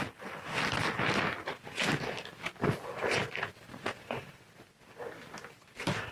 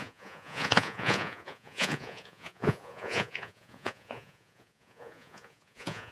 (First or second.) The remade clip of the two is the second